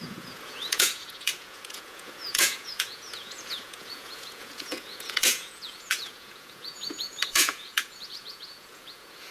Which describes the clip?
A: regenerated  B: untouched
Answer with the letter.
A